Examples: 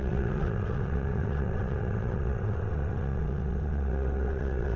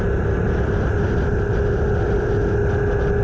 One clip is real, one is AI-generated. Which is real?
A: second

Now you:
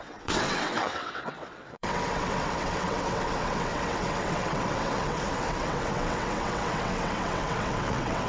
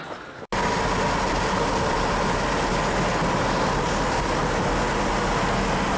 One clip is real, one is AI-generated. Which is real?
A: second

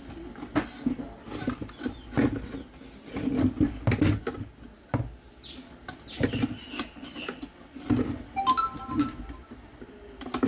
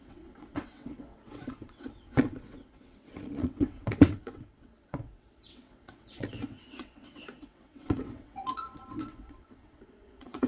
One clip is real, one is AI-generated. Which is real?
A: first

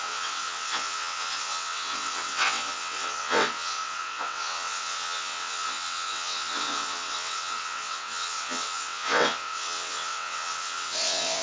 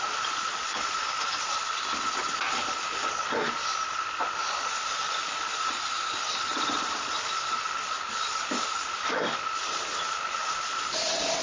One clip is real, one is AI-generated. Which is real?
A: second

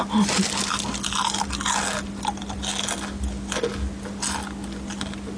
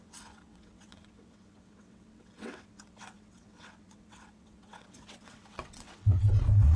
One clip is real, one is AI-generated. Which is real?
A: first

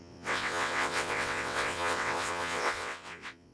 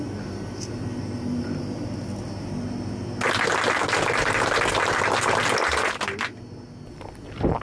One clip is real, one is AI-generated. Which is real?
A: second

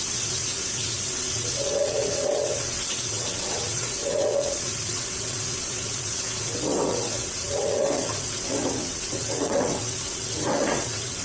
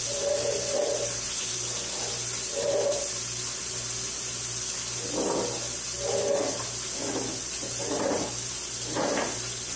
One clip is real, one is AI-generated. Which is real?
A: second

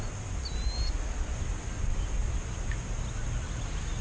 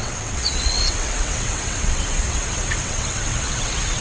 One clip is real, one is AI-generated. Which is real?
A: first